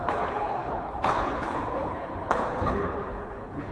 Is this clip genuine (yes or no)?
no